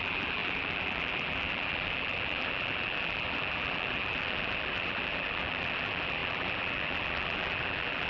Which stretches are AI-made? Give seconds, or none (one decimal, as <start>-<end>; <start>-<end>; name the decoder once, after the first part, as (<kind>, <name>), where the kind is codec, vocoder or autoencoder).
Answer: 0.0-8.1 (vocoder, BigVGAN v2)